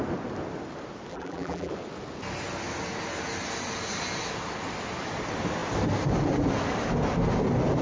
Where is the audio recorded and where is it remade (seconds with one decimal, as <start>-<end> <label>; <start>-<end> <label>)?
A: 0.0-1.1 recorded; 1.1-1.7 remade; 1.7-7.8 recorded